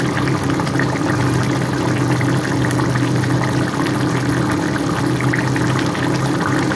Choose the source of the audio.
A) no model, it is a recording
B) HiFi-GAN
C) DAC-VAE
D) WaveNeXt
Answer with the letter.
A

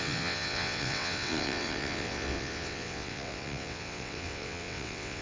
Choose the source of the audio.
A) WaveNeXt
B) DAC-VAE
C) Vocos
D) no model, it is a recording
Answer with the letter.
A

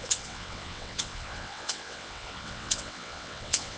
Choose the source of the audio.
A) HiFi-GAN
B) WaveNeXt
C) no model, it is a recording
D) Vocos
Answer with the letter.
B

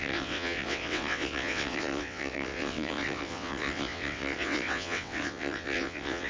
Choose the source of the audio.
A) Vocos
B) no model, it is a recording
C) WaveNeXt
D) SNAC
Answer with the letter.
C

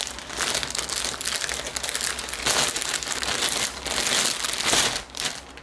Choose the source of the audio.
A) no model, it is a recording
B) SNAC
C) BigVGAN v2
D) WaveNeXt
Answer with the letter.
A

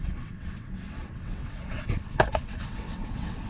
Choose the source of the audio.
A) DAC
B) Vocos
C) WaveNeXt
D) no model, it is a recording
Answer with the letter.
C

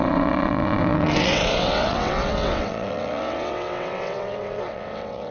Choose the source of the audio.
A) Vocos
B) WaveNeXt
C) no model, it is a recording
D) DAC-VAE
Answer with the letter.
B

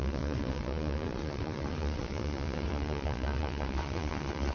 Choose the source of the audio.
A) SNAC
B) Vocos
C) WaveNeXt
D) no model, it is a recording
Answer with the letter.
C